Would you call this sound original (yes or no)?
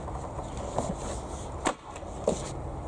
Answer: yes